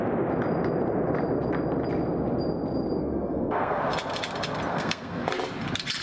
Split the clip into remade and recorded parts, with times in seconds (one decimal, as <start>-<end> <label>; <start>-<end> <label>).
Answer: 0.0-3.0 recorded; 3.0-3.8 remade; 3.8-4.7 recorded; 4.7-5.3 remade; 5.3-6.0 recorded